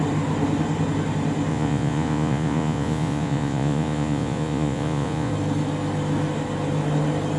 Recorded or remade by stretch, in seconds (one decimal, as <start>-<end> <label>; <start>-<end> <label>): 0.0-1.5 recorded; 1.5-5.3 remade; 5.3-7.4 recorded

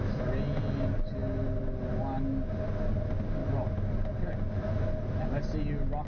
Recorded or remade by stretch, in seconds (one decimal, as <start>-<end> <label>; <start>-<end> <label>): 0.0-6.1 recorded

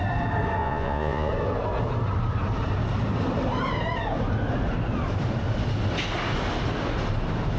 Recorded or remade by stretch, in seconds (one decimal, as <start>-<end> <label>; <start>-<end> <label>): 0.0-0.6 recorded; 0.6-1.3 remade; 1.3-7.6 recorded

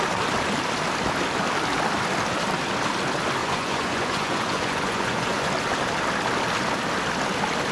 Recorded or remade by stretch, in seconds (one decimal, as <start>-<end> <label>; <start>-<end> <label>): 0.0-3.4 recorded; 3.4-5.5 remade; 5.5-7.7 recorded

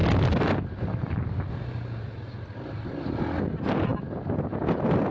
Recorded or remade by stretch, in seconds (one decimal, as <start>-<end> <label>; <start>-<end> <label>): 0.0-5.1 recorded